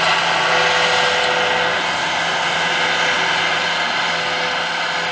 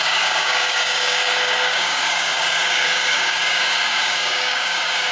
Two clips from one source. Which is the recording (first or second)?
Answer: first